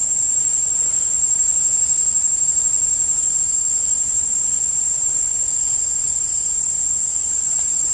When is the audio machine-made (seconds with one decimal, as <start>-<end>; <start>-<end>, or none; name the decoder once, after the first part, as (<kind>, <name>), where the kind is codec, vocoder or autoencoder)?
none